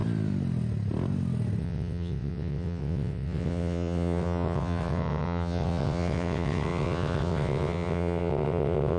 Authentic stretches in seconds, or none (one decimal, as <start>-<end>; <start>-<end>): 0.0-1.6